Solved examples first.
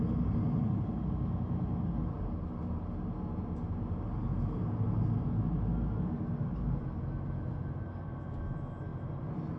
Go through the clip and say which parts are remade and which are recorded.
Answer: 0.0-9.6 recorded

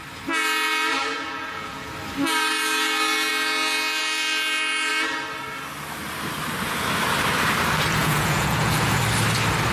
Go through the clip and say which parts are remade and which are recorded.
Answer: 0.0-1.0 recorded; 1.0-1.9 remade; 1.9-8.0 recorded; 8.0-9.0 remade; 9.0-9.7 recorded

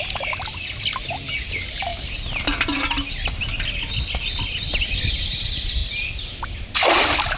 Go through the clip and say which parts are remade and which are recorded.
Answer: 0.0-7.4 recorded

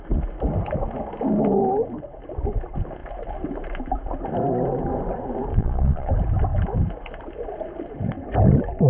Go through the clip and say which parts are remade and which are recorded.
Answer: 0.0-5.5 recorded; 5.5-6.1 remade; 6.1-8.9 recorded

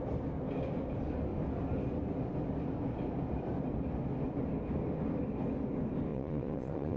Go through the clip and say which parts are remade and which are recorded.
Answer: 0.0-6.1 recorded; 6.1-7.0 remade